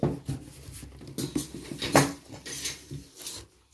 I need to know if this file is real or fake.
real